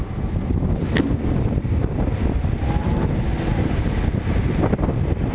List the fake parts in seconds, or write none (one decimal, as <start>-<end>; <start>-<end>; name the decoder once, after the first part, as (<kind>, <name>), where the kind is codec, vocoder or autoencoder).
none